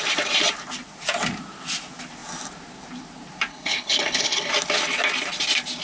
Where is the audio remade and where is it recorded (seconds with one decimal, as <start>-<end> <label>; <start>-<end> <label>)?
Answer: 0.0-3.5 recorded; 3.5-4.5 remade; 4.5-5.8 recorded